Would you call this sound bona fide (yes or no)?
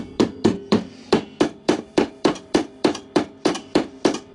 no